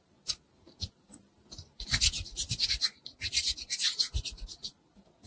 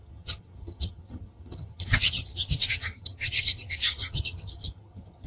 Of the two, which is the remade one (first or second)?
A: second